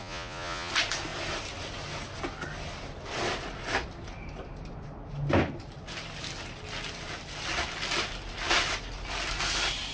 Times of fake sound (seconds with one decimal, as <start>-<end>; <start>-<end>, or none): 0.0-0.7